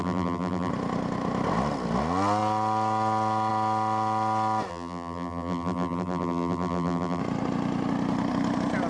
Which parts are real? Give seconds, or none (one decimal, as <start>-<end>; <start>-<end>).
0.7-4.7; 7.2-8.9